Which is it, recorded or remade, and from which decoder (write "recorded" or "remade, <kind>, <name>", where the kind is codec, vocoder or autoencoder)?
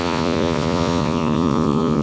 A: remade, vocoder, Vocos